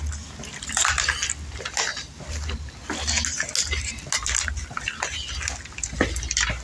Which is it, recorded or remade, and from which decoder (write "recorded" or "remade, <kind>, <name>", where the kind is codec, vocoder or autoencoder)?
recorded